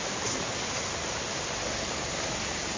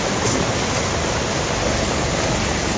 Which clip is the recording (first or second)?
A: second